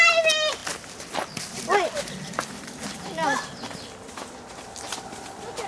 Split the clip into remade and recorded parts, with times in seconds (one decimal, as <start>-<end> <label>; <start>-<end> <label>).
0.0-5.7 recorded